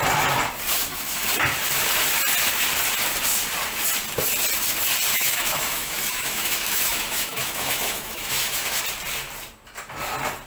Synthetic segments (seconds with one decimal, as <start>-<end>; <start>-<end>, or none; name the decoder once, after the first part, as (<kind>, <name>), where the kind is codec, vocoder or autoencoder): 0.7-1.3 (autoencoder, DAC-VAE); 5.1-8.8